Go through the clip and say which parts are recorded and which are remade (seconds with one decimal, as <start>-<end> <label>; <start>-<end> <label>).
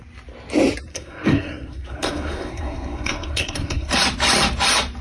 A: 0.0-0.9 recorded; 0.9-3.9 remade; 3.9-5.0 recorded